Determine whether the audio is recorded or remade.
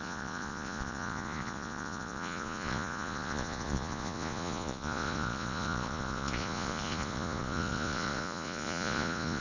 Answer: remade